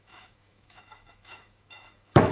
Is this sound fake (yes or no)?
yes